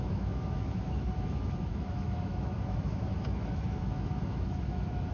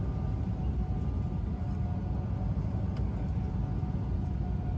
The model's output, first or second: first